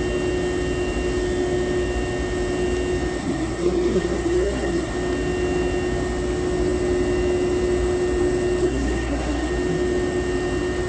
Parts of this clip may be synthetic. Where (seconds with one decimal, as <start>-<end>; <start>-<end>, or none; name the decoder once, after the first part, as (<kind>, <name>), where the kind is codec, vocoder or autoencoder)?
3.2-4.9 (codec, SNAC); 8.6-9.5